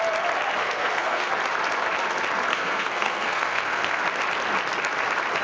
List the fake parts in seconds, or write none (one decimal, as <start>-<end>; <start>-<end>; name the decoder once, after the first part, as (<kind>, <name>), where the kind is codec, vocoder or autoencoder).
0.6-1.3 (codec, SNAC); 2.5-4.0